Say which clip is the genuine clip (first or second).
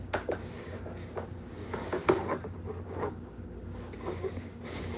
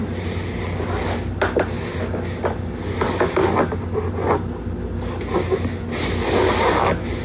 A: second